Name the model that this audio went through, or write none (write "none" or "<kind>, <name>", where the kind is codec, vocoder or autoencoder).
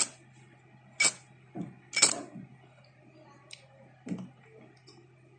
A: none